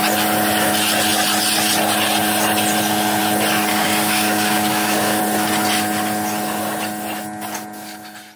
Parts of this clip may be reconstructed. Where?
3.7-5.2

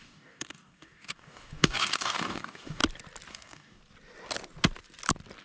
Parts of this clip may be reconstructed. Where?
0.0-2.8; 3.3-3.8

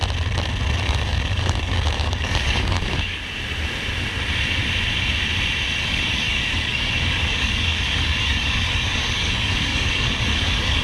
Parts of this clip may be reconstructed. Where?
0.8-3.2; 5.8-10.8